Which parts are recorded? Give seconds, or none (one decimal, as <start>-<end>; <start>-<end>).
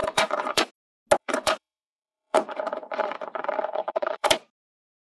0.7-1.2; 4.3-5.1